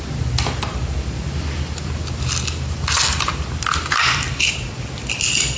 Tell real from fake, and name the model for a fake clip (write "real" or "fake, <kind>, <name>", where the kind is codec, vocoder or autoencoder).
real